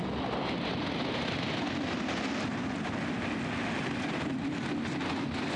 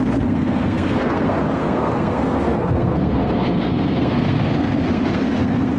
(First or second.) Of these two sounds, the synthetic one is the second